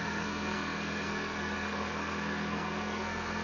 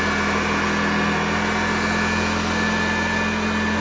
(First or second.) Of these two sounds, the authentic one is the second